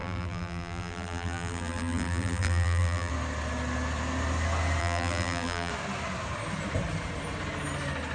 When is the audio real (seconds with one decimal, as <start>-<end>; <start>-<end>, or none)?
3.1-4.8; 5.7-8.1